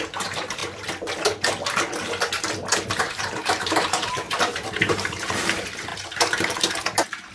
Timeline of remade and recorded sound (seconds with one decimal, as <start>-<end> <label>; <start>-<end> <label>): 0.0-0.6 remade; 0.6-3.0 recorded; 3.0-7.3 remade